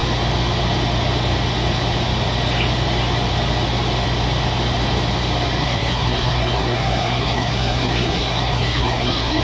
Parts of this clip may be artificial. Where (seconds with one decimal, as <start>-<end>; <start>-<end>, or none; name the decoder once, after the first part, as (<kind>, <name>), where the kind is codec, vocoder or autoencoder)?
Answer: 5.6-9.4 (codec, SNAC)